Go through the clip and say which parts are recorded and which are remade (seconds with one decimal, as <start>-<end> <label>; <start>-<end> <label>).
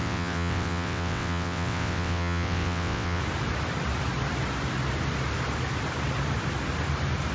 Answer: 0.0-3.2 remade; 3.2-7.3 recorded